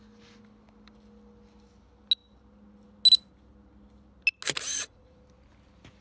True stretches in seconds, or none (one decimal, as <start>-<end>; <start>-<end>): 0.0-4.7; 5.2-6.0